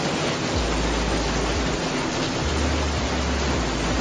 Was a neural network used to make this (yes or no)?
no